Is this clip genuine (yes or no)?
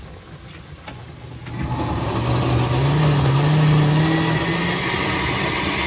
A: yes